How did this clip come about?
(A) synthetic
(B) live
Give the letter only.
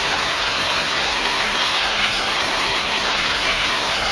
A